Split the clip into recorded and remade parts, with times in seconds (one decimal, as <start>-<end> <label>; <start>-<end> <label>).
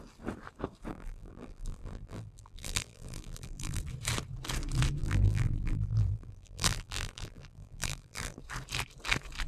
0.0-0.9 recorded; 0.9-3.8 remade; 3.8-5.0 recorded; 5.0-8.4 remade; 8.4-9.5 recorded